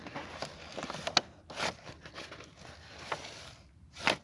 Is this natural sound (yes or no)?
yes